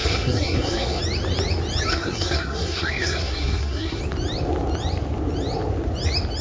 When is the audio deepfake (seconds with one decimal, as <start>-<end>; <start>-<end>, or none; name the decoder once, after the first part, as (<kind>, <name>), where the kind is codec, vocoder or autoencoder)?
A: 0.0-1.0 (codec, SNAC); 1.9-4.0